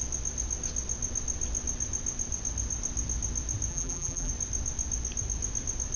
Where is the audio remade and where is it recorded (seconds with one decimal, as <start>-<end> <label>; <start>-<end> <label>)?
0.0-3.7 recorded; 3.7-4.3 remade; 4.3-6.0 recorded